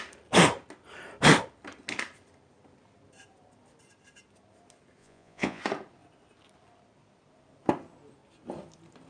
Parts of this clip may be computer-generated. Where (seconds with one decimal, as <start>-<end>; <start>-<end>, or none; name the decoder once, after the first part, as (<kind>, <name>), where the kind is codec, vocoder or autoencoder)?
5.0-5.6 (vocoder, Vocos)